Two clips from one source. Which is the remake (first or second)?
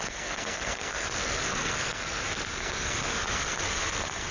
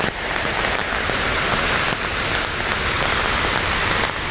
first